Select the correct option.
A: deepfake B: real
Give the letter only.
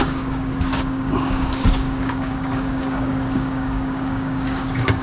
A